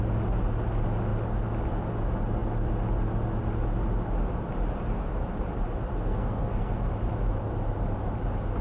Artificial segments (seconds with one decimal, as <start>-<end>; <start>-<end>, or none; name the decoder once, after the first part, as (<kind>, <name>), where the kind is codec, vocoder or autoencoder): 5.9-6.9 (codec, SNAC)